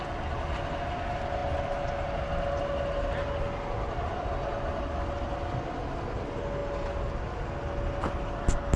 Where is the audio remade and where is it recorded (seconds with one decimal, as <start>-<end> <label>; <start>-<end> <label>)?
0.0-8.8 recorded